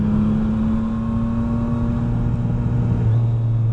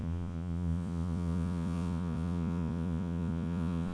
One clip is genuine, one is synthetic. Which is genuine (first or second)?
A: first